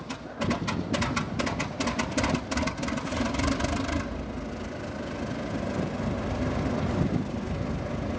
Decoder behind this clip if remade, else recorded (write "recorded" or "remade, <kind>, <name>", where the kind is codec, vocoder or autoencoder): recorded